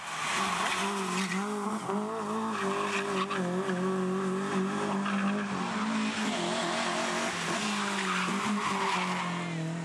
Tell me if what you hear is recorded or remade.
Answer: recorded